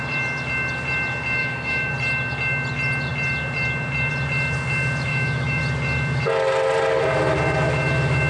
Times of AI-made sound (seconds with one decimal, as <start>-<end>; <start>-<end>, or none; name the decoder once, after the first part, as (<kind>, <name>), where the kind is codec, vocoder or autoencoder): 1.4-1.9 (autoencoder, DAC-VAE); 5.1-5.6